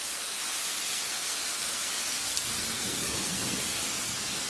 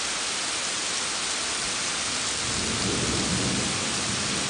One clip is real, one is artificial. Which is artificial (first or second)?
first